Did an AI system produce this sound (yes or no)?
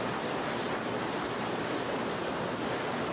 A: no